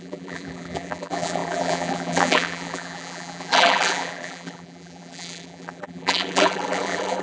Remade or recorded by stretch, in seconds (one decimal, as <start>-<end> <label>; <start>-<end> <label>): 0.0-7.2 remade